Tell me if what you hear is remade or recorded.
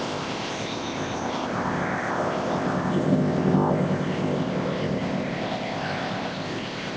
remade